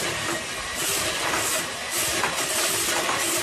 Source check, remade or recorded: recorded